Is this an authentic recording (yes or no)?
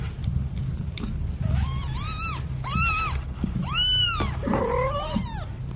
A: yes